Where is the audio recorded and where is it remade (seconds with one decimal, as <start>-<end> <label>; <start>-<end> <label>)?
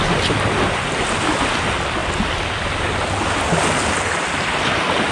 0.0-5.1 recorded